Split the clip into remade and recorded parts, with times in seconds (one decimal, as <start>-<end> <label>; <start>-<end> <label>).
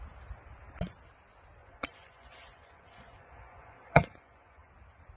0.0-1.6 recorded; 1.6-4.7 remade; 4.7-5.2 recorded